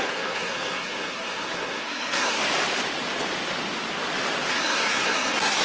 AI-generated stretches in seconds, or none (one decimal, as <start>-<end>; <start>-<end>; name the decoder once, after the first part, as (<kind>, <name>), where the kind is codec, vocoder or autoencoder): 0.0-2.4 (codec, SNAC); 4.5-5.6